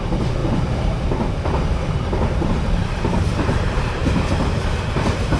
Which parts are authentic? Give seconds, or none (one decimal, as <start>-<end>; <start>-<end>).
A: 4.0-4.9